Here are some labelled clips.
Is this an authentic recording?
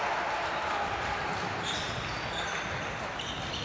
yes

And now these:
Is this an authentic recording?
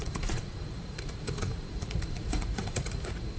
no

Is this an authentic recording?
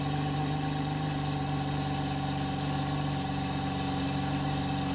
yes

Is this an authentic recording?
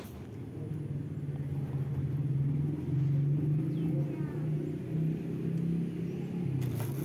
yes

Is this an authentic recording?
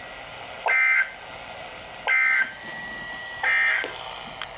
yes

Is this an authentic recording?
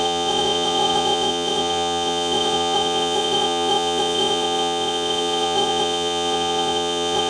no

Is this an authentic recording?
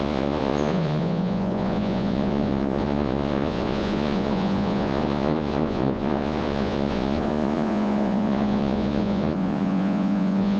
no